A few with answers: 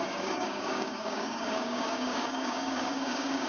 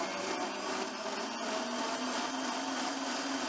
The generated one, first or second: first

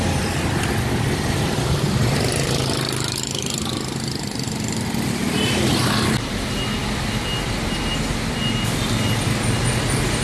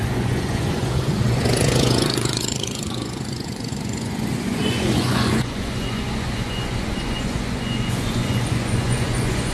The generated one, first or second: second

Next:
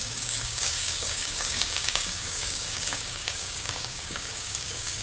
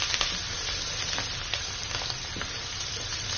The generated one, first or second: first